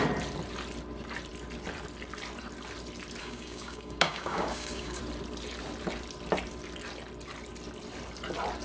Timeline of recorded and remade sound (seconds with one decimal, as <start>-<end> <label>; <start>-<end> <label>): 0.0-3.2 recorded; 3.2-5.0 remade; 5.0-8.6 recorded